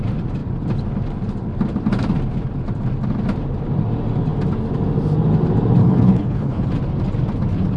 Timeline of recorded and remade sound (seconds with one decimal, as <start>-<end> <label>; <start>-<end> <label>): 0.0-5.8 recorded; 5.8-6.7 remade; 6.7-7.8 recorded